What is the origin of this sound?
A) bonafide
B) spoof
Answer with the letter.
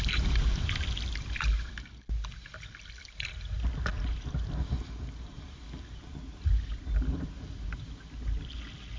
A